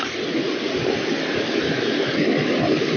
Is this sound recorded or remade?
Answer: recorded